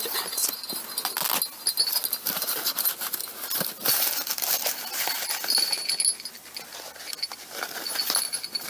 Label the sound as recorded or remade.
recorded